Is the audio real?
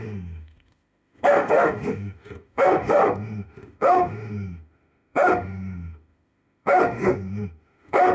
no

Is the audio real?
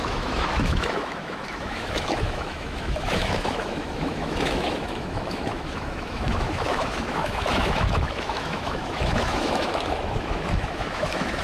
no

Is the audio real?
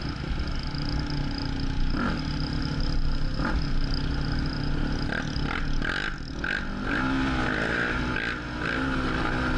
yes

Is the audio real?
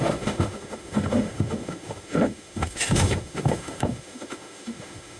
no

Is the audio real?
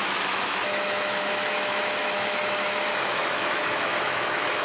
no